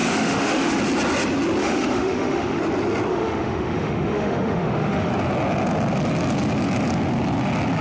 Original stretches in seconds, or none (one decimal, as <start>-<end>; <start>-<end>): 0.8-1.6; 2.6-3.1; 5.1-7.8